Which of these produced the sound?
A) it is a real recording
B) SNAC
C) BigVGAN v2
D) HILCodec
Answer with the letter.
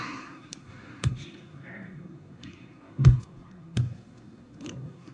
B